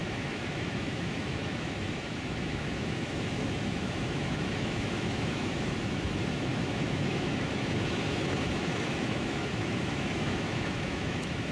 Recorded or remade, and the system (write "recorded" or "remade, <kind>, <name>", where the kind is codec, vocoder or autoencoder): remade, autoencoder, DAC-VAE